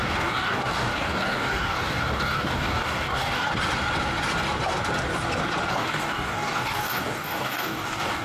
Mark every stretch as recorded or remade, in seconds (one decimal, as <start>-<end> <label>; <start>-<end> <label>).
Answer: 0.0-3.5 remade; 3.5-5.7 recorded; 5.7-8.2 remade